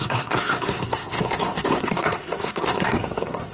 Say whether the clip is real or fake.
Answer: fake